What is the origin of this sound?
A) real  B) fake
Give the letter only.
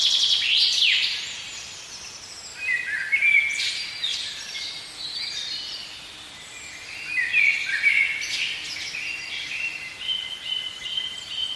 A